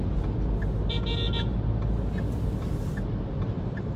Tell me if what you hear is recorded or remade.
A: recorded